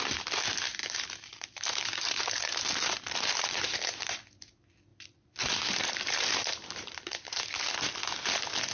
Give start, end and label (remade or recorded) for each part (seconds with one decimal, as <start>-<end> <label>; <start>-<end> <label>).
0.0-0.8 recorded; 0.8-4.2 remade; 4.2-4.9 recorded; 4.9-7.4 remade; 7.4-8.7 recorded